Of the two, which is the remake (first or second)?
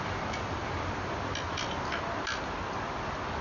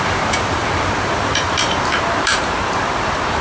second